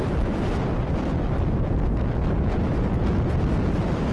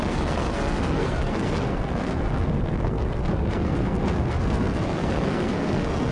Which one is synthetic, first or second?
second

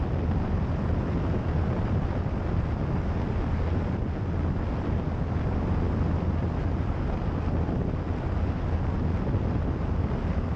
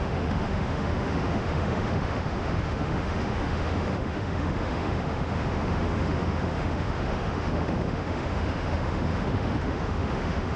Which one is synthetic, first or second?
second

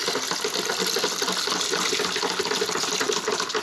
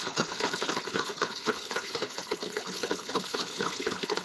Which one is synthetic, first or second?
second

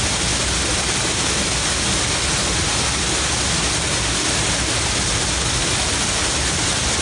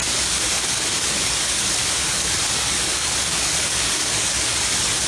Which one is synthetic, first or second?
second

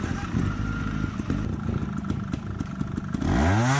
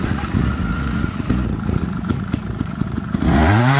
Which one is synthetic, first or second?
second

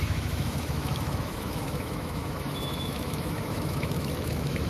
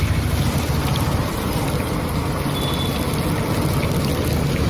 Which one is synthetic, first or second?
first